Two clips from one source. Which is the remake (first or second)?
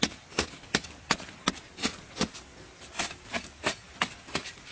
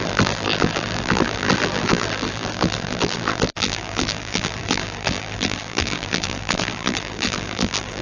second